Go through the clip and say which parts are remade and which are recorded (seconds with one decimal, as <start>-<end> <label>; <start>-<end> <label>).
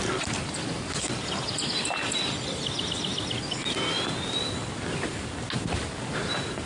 0.0-6.7 recorded